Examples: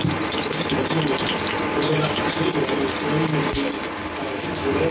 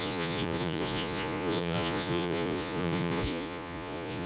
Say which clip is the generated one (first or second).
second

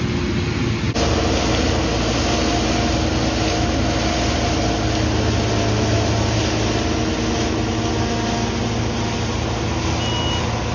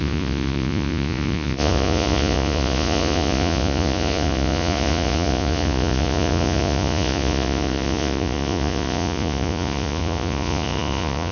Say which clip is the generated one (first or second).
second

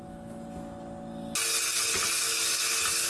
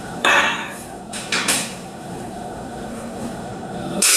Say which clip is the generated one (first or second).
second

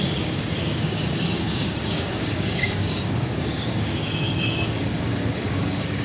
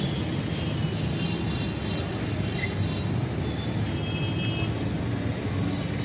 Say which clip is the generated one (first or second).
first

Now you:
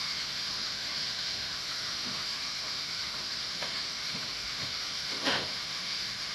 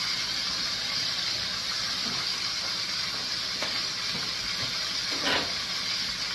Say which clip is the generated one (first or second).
first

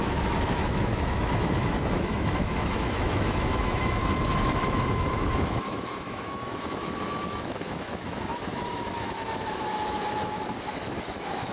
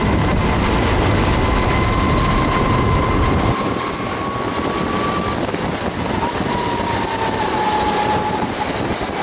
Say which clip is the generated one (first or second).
first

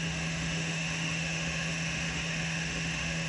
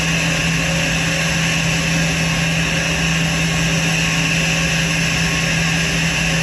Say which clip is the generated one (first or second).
first